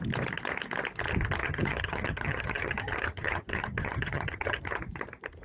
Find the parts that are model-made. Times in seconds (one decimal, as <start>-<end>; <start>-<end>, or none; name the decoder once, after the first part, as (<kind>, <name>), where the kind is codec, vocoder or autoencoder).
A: 1.4-4.6 (vocoder, HiFi-GAN)